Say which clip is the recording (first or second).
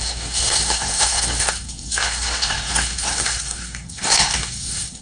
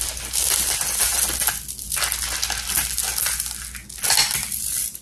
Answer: second